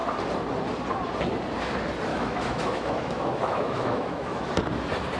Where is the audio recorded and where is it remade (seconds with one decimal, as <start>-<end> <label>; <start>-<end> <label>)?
0.0-2.1 recorded; 2.1-4.5 remade; 4.5-5.2 recorded